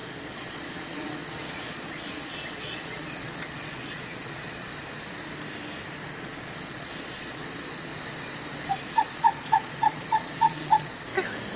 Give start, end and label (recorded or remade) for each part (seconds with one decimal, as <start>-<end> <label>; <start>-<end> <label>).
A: 0.0-4.7 remade; 4.7-6.2 recorded; 6.2-7.9 remade; 7.9-8.7 recorded; 8.7-11.1 remade; 11.1-11.6 recorded